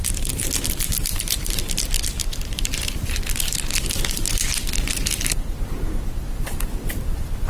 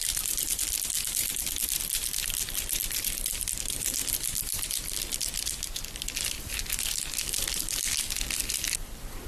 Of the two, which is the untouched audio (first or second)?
second